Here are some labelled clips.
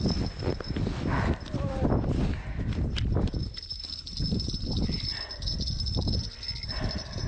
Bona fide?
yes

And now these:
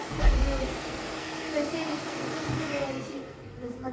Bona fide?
no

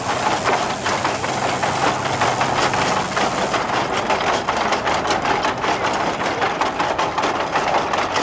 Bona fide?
yes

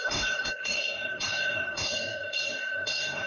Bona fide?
no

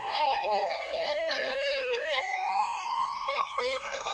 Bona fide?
no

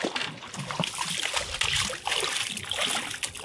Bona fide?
yes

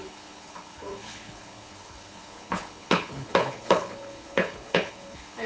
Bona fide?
no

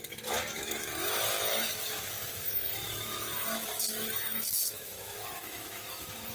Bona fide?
no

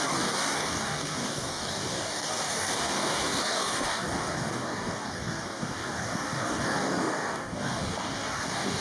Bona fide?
no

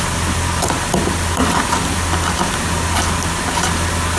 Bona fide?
yes